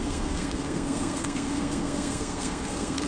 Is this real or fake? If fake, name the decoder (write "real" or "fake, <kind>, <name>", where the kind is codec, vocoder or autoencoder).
fake, codec, SNAC